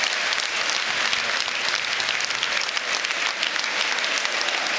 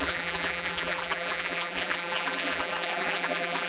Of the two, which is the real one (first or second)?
first